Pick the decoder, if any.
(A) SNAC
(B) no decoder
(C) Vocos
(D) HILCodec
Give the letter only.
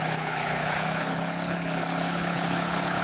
D